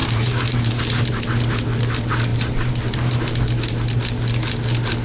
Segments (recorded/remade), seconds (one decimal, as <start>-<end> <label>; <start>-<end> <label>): 0.0-1.2 remade; 1.2-2.3 recorded; 2.3-3.4 remade; 3.4-5.0 recorded